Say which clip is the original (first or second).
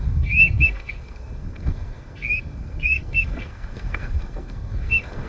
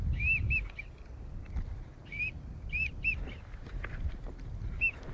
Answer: second